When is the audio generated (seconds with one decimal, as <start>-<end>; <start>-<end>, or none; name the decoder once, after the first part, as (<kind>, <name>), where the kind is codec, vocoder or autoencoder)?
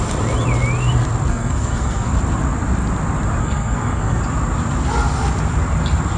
1.3-2.1 (codec, SNAC); 3.4-4.2